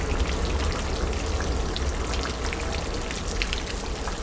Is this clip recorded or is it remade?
recorded